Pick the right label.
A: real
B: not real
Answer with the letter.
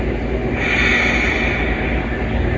A